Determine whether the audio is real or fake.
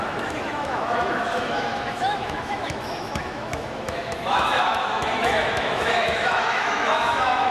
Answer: fake